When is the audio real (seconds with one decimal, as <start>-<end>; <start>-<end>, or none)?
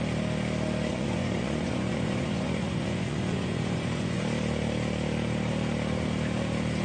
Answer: 0.0-0.9; 4.2-6.8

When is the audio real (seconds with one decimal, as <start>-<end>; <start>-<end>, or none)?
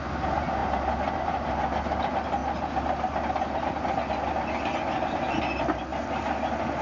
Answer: 0.0-6.8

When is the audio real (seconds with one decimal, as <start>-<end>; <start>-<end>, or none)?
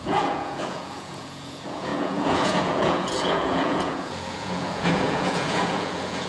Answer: none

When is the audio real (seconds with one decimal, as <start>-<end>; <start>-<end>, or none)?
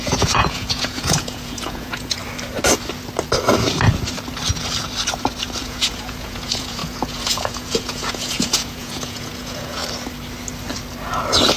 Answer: 2.2-5.6; 9.8-11.6